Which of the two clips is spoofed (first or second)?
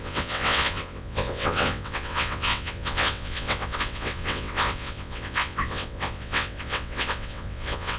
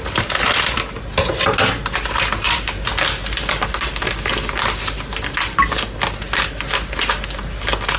first